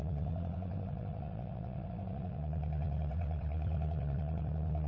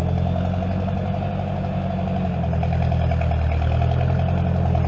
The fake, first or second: first